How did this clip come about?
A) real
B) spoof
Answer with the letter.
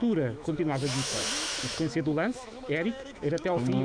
B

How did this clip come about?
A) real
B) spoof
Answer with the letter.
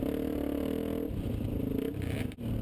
A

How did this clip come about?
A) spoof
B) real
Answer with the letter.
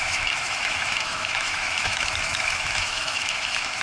A